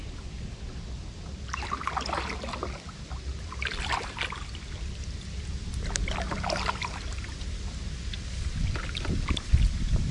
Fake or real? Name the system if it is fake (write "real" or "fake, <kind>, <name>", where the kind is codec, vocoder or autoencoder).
real